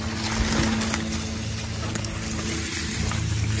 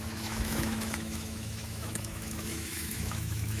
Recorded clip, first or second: first